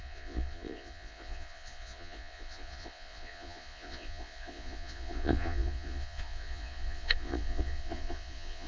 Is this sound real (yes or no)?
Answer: no